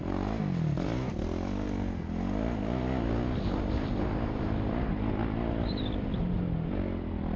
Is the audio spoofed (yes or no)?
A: no